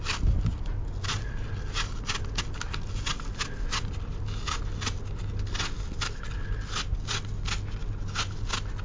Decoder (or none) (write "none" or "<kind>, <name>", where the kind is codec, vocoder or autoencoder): none